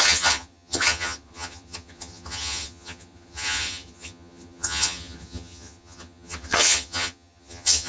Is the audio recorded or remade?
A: remade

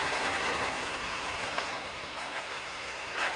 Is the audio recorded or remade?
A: remade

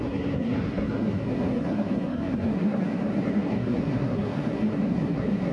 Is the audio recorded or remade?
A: remade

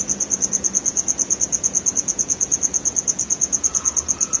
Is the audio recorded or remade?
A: remade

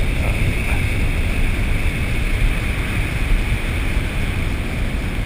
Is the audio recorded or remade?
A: recorded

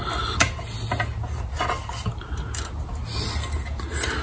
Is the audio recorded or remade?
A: recorded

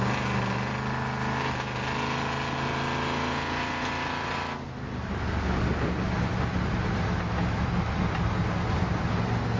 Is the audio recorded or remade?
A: recorded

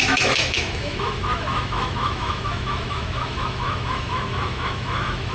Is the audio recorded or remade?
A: remade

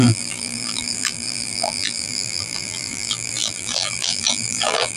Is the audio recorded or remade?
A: remade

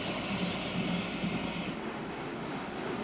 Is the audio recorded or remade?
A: recorded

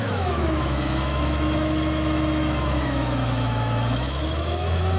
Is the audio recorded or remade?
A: remade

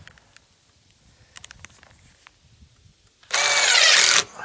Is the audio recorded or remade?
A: recorded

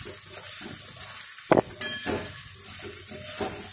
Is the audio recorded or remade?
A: recorded